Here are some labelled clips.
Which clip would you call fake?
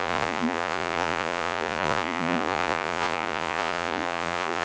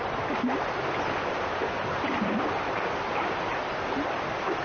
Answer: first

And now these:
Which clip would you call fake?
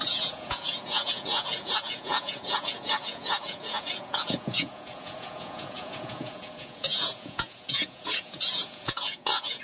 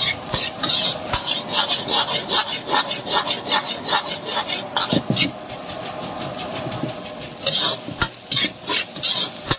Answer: first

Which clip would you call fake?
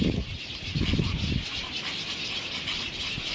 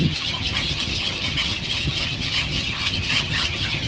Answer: second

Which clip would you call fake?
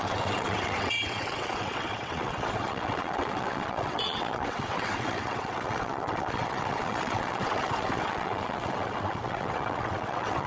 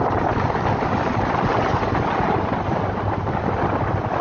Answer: first